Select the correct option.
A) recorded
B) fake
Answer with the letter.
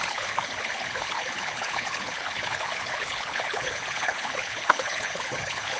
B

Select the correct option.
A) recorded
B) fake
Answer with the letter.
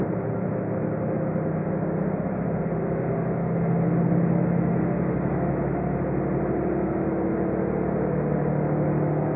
A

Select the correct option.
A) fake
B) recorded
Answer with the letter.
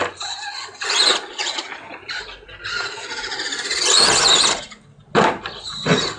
B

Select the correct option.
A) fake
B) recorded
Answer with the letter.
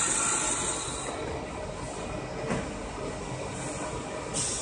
B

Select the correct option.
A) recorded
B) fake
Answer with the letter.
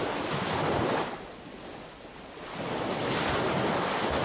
A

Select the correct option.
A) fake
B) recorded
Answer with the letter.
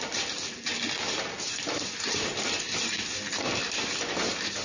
B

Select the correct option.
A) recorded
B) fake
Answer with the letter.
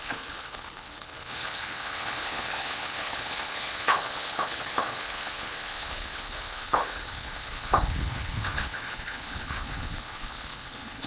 B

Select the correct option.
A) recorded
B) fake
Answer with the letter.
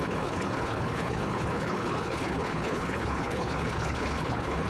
B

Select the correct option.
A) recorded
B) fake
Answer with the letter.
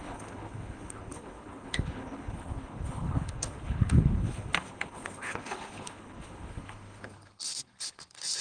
B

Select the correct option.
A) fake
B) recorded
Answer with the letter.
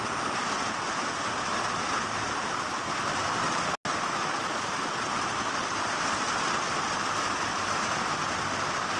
B